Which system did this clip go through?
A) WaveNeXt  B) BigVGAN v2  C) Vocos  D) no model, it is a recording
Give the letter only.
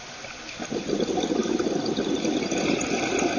D